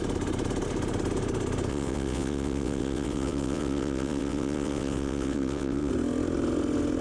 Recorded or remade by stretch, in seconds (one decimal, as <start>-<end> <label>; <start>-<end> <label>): 0.0-1.7 recorded; 1.7-5.9 remade; 5.9-7.0 recorded